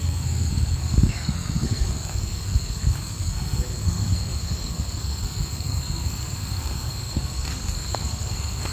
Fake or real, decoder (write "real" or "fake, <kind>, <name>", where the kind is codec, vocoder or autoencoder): fake, codec, SNAC